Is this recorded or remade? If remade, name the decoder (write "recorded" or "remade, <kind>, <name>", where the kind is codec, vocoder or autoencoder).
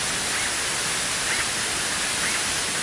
recorded